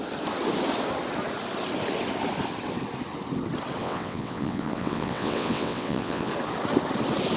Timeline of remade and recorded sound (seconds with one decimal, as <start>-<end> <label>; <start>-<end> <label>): 0.0-3.8 recorded; 3.8-6.3 remade; 6.3-7.4 recorded